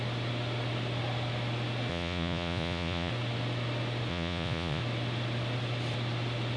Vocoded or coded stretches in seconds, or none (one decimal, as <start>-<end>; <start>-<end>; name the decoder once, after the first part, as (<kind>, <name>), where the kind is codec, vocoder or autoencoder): 1.9-3.1 (vocoder, Vocos); 4.1-4.8